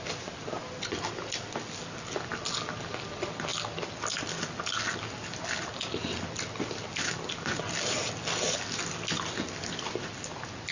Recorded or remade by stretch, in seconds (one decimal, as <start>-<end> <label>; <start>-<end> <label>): 0.0-10.7 recorded